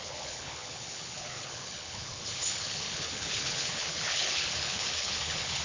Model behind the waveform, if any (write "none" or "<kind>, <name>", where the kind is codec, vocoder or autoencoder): codec, HILCodec